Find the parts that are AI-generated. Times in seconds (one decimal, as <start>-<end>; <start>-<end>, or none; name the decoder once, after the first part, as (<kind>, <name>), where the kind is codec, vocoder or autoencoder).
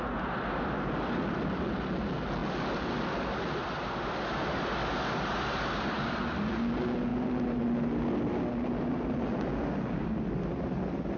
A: none